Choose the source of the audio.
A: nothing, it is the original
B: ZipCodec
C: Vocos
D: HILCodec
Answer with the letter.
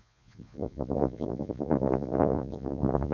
C